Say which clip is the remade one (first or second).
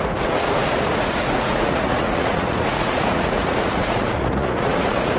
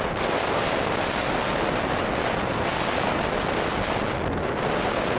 first